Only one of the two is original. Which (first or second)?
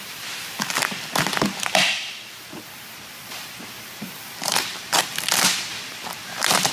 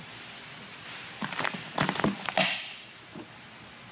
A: second